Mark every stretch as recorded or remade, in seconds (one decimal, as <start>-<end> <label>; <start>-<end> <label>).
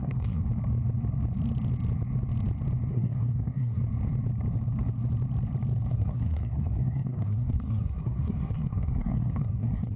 0.0-0.4 remade; 0.4-2.9 recorded; 2.9-3.8 remade; 3.8-5.9 recorded; 5.9-10.0 remade